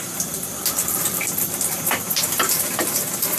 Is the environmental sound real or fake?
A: fake